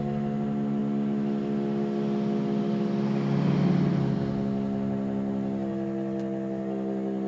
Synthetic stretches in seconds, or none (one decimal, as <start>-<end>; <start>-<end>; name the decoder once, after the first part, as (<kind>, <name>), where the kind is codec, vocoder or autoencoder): none